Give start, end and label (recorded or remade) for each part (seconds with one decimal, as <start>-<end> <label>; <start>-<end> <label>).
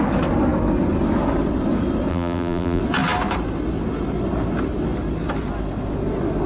0.0-2.1 recorded; 2.1-2.8 remade; 2.8-6.5 recorded